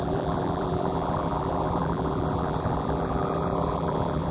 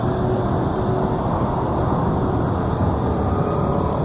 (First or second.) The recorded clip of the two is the second